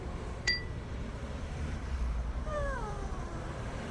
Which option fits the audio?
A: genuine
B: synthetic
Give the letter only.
B